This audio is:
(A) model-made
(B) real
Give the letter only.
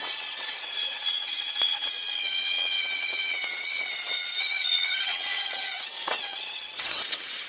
A